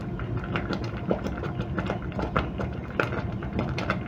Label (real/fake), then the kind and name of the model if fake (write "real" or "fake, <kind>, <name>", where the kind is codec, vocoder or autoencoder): real